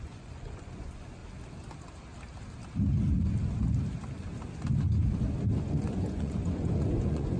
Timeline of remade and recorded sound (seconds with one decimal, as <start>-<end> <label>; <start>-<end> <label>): 0.0-1.2 remade; 1.2-5.6 recorded; 5.6-7.4 remade